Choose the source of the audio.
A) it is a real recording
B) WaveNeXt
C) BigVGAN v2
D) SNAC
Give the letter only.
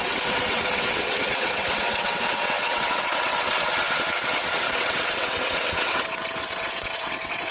B